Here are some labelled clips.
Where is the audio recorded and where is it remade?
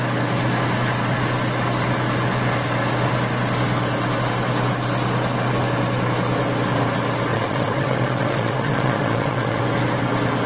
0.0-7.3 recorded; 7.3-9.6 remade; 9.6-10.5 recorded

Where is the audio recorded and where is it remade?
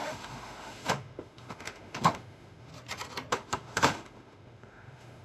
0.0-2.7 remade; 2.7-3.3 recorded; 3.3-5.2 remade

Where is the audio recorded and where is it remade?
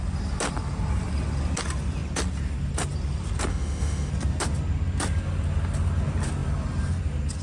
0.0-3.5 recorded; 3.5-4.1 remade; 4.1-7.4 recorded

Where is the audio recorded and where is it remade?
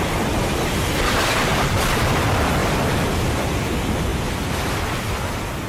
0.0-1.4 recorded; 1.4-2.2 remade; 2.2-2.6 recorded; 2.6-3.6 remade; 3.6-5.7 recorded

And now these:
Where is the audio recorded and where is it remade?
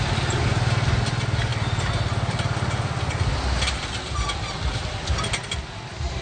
0.0-6.2 recorded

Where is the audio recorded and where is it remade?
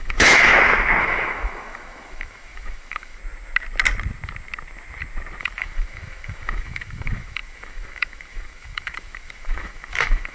0.0-0.5 remade; 0.5-1.0 recorded; 1.0-3.2 remade; 3.2-5.4 recorded; 5.4-10.3 remade